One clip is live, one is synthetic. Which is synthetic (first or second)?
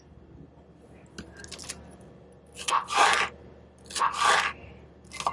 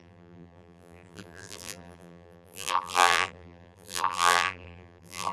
second